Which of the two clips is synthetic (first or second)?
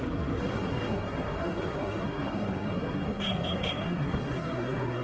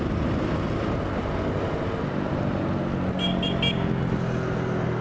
first